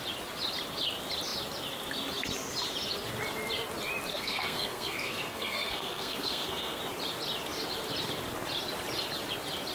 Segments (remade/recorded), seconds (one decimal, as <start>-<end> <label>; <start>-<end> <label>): 0.0-4.1 recorded; 4.1-6.8 remade; 6.8-9.7 recorded